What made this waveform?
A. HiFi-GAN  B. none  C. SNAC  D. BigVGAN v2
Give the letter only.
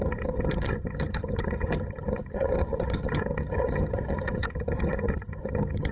A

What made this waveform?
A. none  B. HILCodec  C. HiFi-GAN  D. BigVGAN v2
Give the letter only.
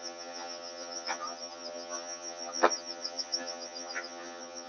C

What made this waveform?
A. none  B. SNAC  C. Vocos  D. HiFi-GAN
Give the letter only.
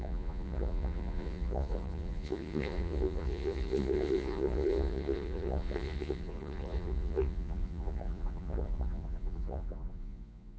C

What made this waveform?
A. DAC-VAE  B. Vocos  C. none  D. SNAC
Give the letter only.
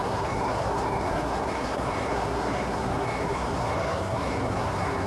D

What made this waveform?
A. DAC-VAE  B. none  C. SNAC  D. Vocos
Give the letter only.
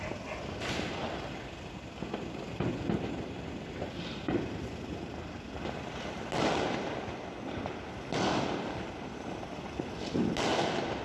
B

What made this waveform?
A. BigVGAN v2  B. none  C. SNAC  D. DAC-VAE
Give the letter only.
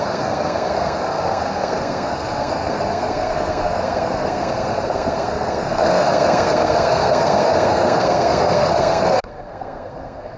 C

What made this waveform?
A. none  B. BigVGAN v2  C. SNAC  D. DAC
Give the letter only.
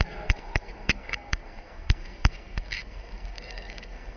C